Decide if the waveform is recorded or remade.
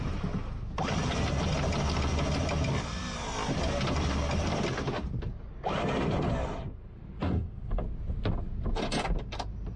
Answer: recorded